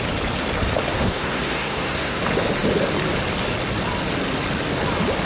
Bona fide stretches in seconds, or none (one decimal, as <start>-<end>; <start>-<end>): 0.0-0.9; 2.2-5.3